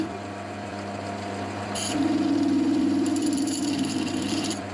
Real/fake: fake